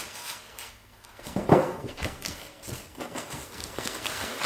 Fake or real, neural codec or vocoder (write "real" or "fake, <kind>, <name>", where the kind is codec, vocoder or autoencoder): fake, codec, SNAC